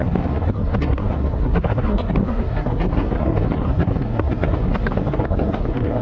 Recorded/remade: remade